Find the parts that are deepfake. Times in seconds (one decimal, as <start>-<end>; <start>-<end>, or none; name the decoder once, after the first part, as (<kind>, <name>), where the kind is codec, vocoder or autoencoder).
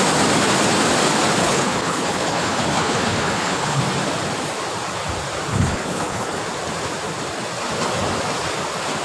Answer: 1.4-3.8 (codec, HILCodec); 5.5-6.4